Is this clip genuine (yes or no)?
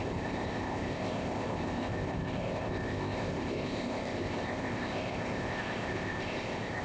no